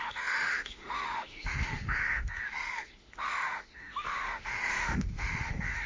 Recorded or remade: remade